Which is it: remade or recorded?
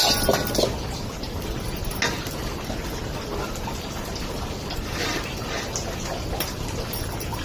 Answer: recorded